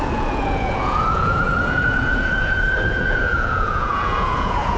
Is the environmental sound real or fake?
fake